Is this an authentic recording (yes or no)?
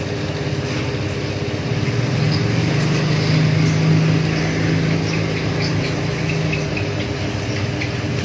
yes